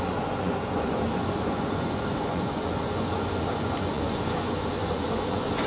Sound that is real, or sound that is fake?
fake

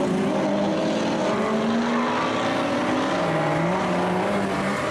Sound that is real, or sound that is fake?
real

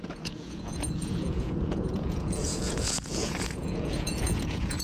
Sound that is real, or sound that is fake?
fake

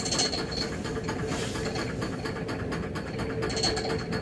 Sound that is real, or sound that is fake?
real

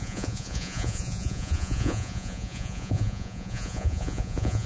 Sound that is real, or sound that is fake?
fake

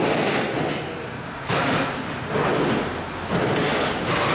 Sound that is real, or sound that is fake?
real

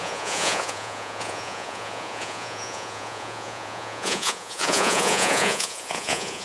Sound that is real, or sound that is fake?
fake